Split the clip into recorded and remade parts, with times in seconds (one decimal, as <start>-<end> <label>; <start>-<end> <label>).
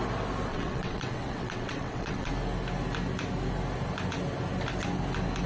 0.0-0.5 recorded; 0.5-2.3 remade; 2.3-5.5 recorded